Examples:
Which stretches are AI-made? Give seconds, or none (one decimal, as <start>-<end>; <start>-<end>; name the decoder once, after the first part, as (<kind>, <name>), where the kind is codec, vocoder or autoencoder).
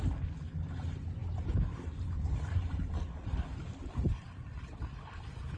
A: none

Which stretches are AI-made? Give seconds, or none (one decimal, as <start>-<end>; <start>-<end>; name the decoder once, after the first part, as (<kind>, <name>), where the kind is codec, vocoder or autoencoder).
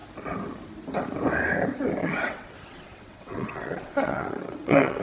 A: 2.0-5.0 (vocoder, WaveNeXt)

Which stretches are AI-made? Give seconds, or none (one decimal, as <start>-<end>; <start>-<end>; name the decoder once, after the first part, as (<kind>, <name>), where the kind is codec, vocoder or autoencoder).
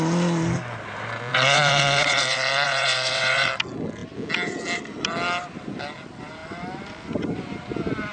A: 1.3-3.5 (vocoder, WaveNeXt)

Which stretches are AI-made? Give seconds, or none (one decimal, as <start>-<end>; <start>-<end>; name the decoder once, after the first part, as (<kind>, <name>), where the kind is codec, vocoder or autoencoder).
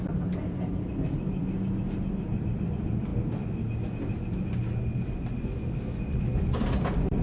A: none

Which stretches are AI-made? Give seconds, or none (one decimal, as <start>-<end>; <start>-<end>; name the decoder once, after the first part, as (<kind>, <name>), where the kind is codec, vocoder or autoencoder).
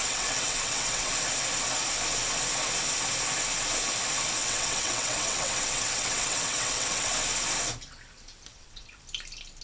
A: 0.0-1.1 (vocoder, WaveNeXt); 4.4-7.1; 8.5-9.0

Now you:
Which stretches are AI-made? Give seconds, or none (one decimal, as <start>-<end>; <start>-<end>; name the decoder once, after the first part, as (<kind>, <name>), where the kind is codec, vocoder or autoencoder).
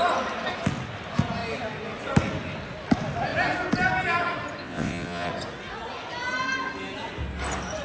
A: 4.6-5.3 (vocoder, WaveNeXt)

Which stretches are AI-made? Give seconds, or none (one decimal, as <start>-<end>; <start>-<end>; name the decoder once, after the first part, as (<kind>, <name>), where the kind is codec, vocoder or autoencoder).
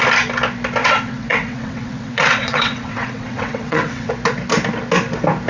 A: 0.8-4.1 (vocoder, WaveNeXt)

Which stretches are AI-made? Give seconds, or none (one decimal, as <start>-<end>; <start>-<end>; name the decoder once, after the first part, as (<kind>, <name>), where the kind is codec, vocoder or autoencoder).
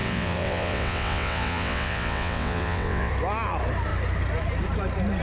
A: 0.0-3.1 (vocoder, WaveNeXt)